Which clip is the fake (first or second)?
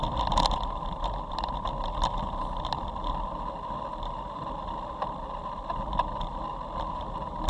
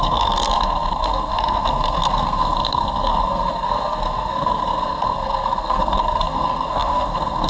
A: second